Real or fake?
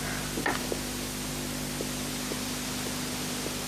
real